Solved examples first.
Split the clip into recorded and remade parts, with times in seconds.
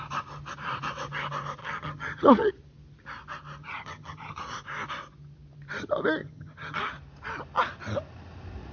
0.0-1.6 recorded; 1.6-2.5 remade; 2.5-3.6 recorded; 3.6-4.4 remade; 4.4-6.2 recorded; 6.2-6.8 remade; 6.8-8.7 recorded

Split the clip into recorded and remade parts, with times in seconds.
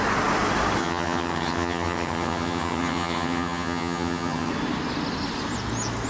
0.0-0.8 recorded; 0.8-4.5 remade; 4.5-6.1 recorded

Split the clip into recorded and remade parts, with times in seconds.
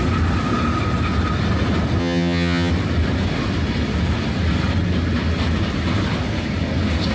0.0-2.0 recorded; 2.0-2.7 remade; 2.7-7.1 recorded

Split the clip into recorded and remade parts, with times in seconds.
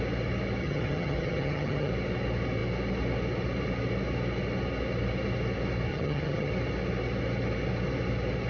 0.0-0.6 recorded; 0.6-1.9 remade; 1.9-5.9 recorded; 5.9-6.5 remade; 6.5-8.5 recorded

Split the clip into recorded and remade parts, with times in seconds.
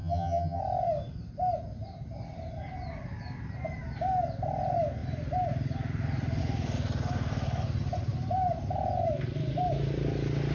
0.0-0.6 remade; 0.6-10.5 recorded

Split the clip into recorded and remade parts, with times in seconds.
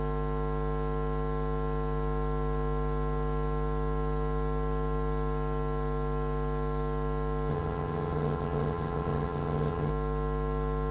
0.0-7.5 recorded; 7.5-9.9 remade; 9.9-10.9 recorded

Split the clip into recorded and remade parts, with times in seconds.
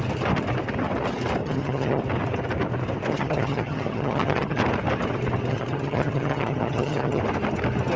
0.0-1.4 recorded; 1.4-2.0 remade; 2.0-3.1 recorded; 3.1-4.6 remade; 4.6-5.5 recorded; 5.5-7.2 remade; 7.2-8.0 recorded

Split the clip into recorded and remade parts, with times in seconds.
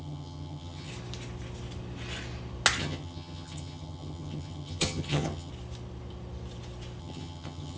0.0-0.9 remade; 0.9-2.8 recorded; 2.8-5.5 remade; 5.5-7.0 recorded; 7.0-7.8 remade